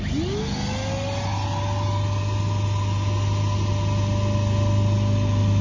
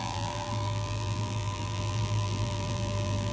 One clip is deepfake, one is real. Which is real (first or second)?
first